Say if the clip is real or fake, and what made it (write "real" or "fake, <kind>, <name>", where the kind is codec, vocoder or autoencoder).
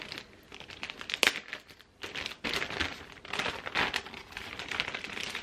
real